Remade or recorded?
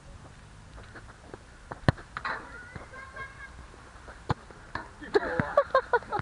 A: recorded